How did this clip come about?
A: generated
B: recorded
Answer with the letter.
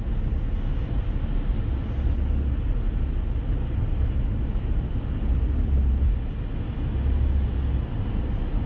B